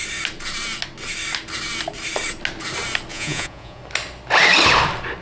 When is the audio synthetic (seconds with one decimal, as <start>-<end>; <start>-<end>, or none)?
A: 3.1-3.8